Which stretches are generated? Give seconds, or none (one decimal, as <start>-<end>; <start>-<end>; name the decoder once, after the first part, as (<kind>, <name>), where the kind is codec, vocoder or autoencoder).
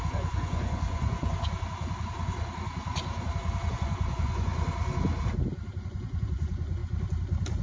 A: 0.0-1.3 (vocoder, Vocos); 3.7-4.5; 5.8-6.8